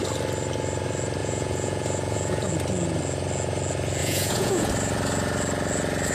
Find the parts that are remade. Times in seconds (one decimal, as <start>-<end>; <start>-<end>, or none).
1.2-2.5; 4.0-4.7